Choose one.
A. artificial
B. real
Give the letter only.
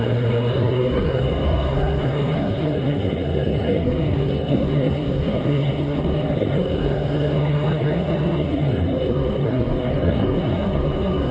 A